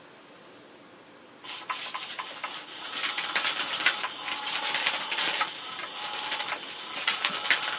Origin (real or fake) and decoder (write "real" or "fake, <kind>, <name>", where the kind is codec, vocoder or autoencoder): real